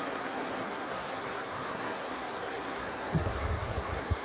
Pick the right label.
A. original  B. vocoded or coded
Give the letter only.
B